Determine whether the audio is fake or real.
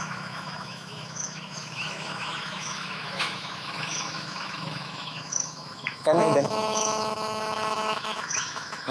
fake